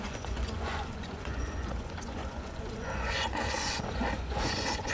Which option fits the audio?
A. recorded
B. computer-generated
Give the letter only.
B